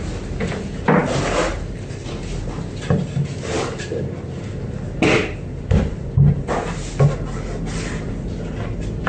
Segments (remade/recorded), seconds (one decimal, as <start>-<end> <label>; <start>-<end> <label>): 0.0-9.1 recorded